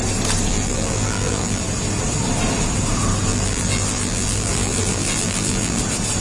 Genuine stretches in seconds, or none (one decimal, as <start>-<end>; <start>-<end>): 0.0-0.5; 1.6-3.3; 5.8-6.2